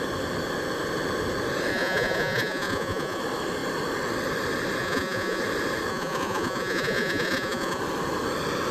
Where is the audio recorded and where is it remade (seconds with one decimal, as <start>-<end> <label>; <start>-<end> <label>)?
0.0-1.7 recorded; 1.7-3.2 remade; 3.2-4.8 recorded; 4.8-5.4 remade; 5.4-5.9 recorded; 5.9-7.8 remade; 7.8-8.7 recorded